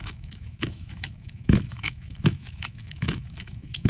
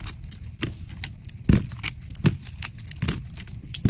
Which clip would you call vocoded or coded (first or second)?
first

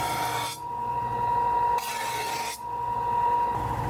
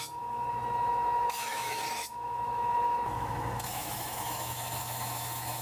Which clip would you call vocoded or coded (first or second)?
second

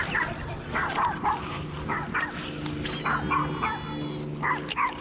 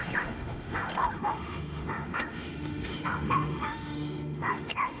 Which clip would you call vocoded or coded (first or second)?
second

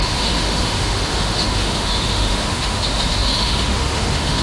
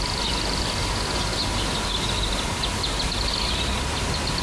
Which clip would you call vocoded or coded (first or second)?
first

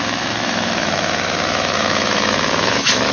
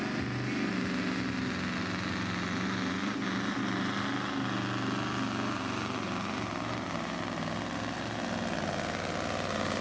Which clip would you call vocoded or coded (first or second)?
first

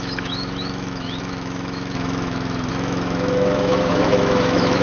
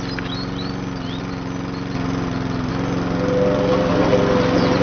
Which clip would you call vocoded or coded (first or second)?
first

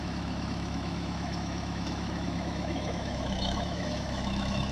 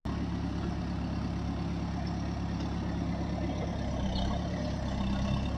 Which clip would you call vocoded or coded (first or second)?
first